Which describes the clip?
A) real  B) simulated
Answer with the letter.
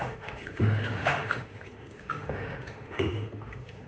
B